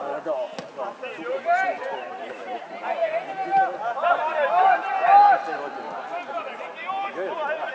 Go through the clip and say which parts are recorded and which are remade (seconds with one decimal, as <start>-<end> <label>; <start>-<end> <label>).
0.0-7.7 recorded